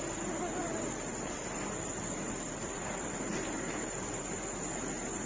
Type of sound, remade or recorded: remade